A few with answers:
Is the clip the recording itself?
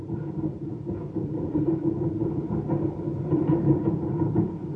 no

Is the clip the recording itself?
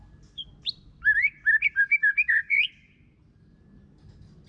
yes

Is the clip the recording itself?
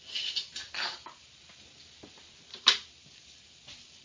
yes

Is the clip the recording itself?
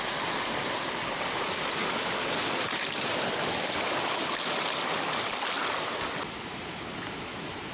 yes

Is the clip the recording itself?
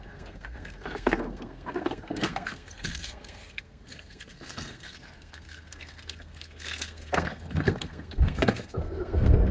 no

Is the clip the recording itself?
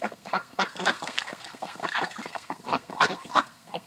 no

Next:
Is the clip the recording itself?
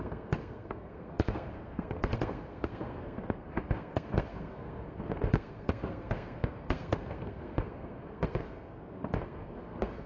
no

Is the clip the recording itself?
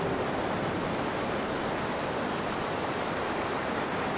yes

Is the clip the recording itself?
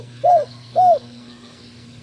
no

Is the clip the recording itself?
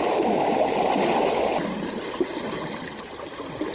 yes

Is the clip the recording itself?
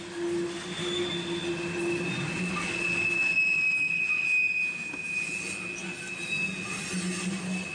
yes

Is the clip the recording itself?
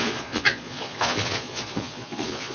no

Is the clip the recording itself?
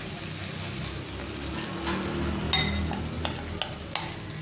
yes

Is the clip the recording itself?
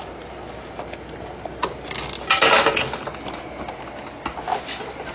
yes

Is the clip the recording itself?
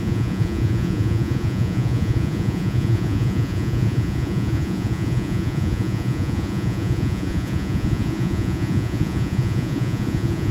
no